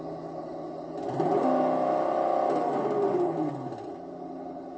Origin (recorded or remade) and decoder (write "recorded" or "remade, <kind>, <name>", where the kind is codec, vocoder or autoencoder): recorded